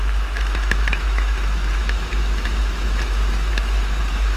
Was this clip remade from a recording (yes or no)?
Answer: yes